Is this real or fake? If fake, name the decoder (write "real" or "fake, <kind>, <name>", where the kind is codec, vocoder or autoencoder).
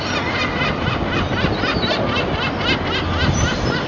real